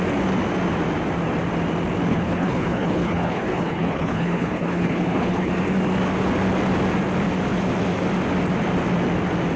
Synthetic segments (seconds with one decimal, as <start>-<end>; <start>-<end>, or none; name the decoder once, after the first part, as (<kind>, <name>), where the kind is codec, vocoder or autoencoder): 2.1-5.5 (codec, HILCodec)